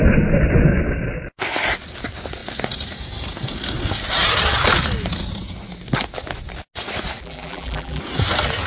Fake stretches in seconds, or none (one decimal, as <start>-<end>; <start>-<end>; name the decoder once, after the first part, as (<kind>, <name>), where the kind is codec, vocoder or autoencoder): 7.2-8.0 (vocoder, BigVGAN v2)